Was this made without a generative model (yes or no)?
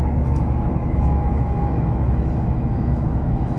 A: no